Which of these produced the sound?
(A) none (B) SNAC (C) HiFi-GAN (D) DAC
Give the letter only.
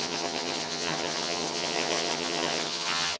C